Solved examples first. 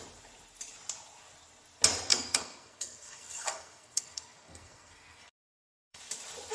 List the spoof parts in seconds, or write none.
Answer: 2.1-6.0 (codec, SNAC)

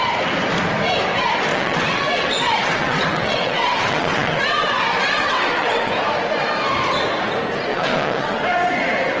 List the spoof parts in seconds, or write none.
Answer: 1.5-5.9 (vocoder, WaveNeXt); 7.7-8.4

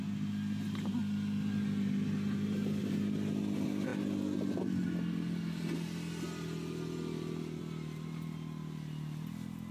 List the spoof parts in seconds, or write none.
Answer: none

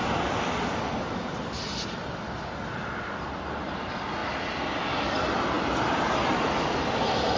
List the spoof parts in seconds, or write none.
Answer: none

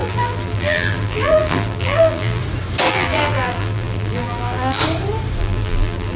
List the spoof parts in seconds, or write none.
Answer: 0.0-2.4 (vocoder, BigVGAN v2); 2.9-4.8; 5.4-6.2

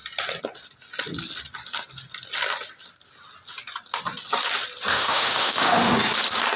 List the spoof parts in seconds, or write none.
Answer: 4.9-5.9 (autoencoder, DAC-VAE)